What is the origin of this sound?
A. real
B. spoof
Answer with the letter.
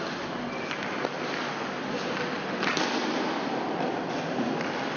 A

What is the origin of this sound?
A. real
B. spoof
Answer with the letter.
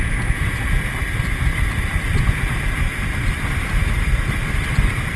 B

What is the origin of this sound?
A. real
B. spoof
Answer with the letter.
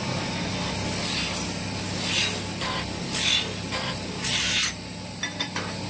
A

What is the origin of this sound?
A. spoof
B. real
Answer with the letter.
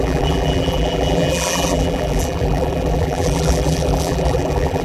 A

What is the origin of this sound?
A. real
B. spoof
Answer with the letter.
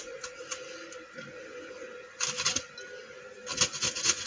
A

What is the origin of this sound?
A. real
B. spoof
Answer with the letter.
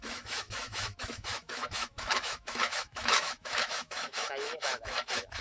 B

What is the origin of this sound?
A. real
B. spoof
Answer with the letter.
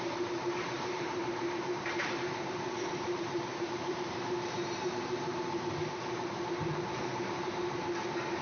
B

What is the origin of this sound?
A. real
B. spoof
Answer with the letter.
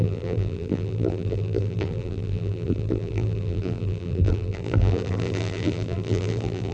B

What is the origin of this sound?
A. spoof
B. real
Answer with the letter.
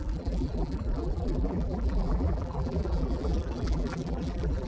A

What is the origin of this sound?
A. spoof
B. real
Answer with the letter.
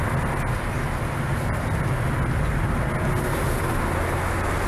B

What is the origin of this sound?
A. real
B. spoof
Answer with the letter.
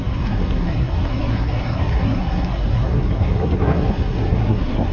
B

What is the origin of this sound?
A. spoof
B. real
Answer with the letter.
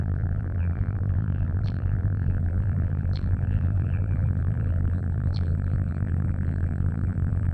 A